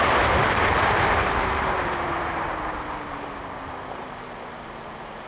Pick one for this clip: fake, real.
fake